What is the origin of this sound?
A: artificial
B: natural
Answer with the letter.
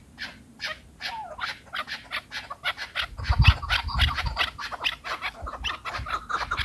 B